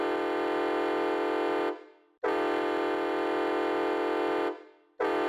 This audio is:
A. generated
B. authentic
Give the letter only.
B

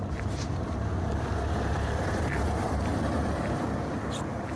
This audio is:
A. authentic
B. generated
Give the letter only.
A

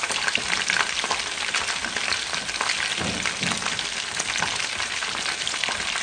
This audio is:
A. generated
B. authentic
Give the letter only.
B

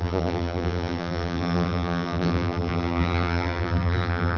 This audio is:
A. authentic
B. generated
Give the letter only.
B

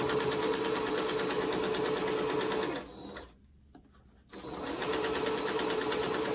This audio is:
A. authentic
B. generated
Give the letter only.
A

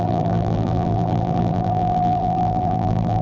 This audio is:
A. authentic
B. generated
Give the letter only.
B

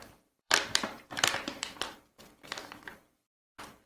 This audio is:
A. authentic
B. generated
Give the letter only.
B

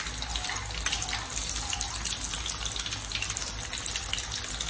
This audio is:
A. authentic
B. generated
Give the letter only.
A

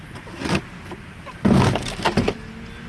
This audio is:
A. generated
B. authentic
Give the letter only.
B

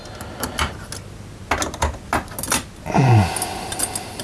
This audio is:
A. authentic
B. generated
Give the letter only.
A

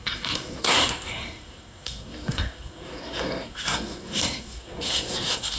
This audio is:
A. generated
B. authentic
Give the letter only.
A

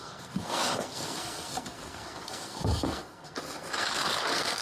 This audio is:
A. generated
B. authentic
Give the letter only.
A